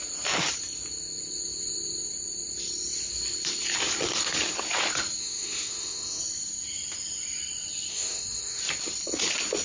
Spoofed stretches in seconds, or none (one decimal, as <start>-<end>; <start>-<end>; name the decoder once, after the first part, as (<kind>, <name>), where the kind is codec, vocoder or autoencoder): 5.2-6.2 (autoencoder, DAC-VAE); 7.9-8.6